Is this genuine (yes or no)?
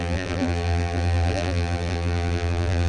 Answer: no